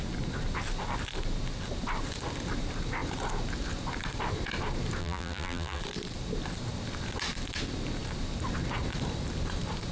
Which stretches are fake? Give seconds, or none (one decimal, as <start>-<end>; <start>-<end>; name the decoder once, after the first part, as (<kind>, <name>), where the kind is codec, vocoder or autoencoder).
5.0-5.8 (vocoder, BigVGAN v2)